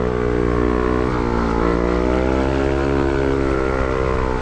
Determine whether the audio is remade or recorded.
recorded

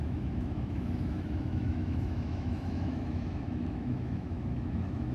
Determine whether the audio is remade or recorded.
remade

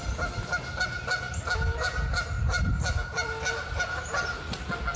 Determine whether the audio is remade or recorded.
recorded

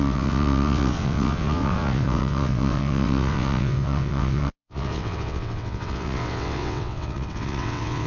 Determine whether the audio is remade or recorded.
remade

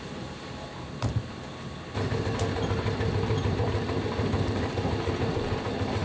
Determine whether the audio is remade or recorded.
remade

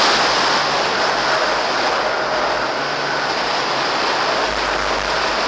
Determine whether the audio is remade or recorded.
recorded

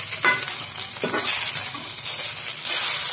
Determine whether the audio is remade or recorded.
recorded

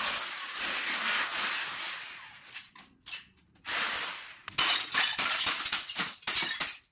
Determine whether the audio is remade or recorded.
recorded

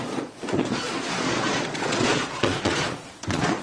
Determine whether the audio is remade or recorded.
remade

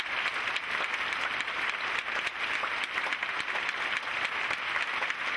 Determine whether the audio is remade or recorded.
recorded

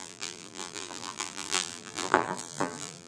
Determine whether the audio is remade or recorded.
remade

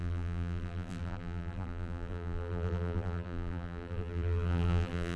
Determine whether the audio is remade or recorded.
remade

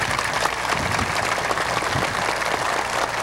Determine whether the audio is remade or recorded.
recorded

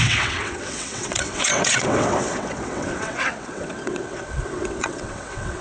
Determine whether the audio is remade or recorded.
remade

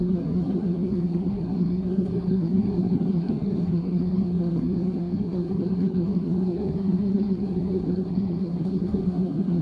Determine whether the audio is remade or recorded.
remade